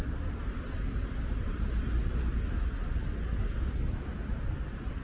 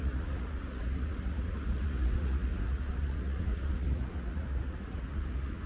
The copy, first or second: second